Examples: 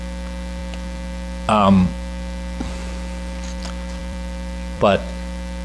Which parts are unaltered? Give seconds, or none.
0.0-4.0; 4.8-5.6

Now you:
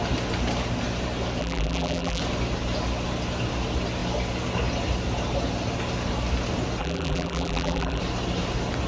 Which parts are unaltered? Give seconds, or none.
0.0-1.4; 2.2-6.8; 8.0-8.9

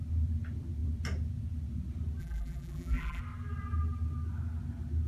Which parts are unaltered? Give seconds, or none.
0.0-2.2; 3.2-5.1

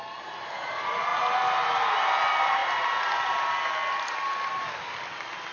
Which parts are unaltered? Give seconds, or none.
0.0-5.5

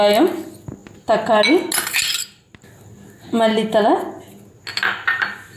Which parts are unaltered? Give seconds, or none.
0.0-5.6